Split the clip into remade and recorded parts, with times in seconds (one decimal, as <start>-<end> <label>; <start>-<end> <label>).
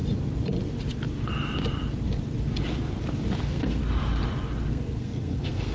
0.0-3.4 recorded; 3.4-3.8 remade; 3.8-4.7 recorded; 4.7-5.7 remade